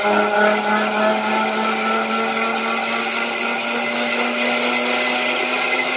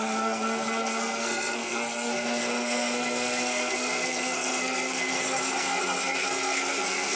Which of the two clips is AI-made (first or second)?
second